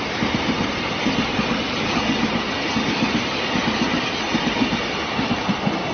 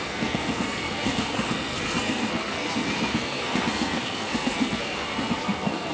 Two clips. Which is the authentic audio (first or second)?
first